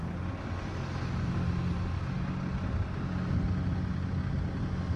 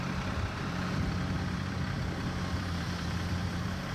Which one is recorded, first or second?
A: first